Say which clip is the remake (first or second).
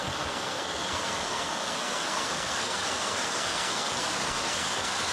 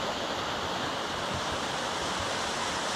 first